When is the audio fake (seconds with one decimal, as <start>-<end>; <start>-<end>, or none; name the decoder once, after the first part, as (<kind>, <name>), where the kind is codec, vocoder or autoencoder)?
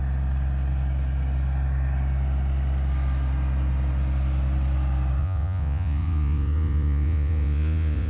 5.2-8.1 (vocoder, Vocos)